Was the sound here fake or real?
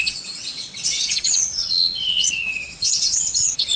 fake